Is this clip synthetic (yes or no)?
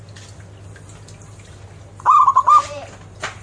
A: no